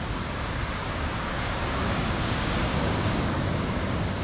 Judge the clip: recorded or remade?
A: remade